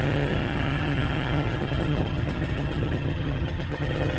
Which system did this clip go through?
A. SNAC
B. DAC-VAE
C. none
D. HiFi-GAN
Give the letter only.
D